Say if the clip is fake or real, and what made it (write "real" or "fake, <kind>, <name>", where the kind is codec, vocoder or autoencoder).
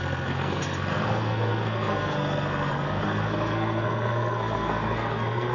fake, codec, SNAC